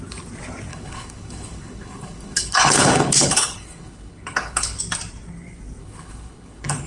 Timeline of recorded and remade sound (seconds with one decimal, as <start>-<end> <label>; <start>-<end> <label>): 0.0-0.7 recorded; 0.7-4.8 remade; 4.8-5.8 recorded; 5.8-6.9 remade